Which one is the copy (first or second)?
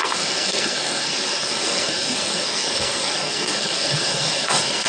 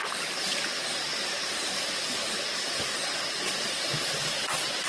first